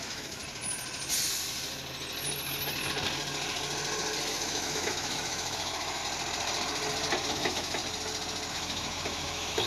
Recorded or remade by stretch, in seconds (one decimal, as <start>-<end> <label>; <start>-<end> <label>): 0.0-0.4 remade; 0.4-4.3 recorded; 4.3-6.0 remade; 6.0-7.3 recorded; 7.3-7.8 remade; 7.8-8.5 recorded; 8.5-9.7 remade